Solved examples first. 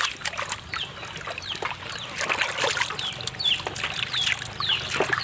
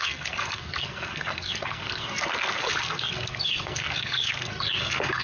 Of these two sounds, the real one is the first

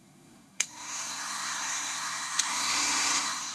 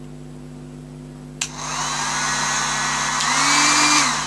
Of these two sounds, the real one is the second